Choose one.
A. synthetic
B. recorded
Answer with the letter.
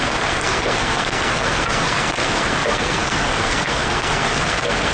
A